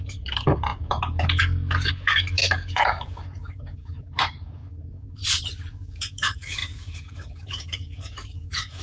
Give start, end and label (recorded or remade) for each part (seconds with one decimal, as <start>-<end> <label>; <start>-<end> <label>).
0.0-5.2 remade; 5.2-5.7 recorded; 5.7-8.8 remade